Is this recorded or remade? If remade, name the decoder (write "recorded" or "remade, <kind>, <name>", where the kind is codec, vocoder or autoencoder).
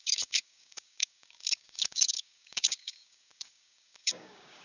remade, codec, DAC